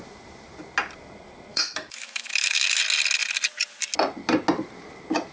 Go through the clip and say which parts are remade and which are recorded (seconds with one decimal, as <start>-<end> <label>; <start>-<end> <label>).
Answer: 0.0-1.5 recorded; 1.5-2.8 remade; 2.8-5.3 recorded